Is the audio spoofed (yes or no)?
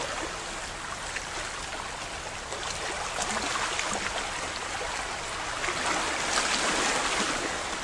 no